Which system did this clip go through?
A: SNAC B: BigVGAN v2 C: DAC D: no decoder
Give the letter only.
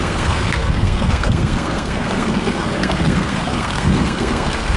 A